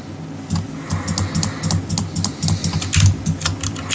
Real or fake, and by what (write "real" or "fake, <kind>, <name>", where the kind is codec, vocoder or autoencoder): real